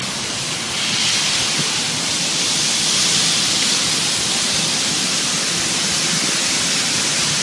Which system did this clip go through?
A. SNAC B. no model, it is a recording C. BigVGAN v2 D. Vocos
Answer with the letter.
B